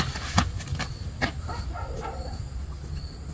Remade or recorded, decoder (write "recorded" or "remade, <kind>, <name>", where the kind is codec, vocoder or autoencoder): recorded